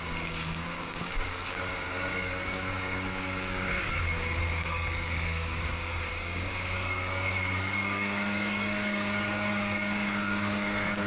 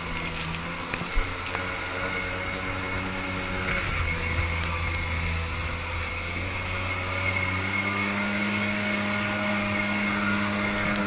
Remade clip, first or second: first